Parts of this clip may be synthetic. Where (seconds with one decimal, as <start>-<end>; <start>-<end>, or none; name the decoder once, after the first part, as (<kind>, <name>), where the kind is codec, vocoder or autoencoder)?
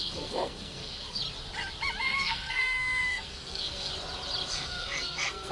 0.0-1.2 (codec, SNAC); 2.0-3.9; 4.5-5.5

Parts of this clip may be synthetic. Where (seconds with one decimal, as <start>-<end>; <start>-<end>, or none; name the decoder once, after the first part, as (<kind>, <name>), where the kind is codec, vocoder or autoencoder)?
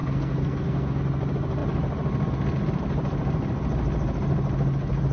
0.0-1.0 (codec, SNAC)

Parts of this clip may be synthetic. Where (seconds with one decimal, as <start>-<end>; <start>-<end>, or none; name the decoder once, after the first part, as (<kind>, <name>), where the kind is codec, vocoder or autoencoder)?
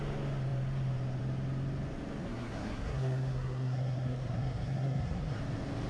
2.2-5.4 (codec, SNAC)